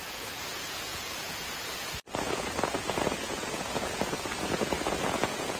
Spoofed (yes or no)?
yes